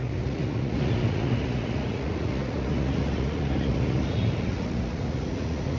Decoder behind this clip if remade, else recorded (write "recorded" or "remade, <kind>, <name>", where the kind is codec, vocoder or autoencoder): remade, vocoder, Vocos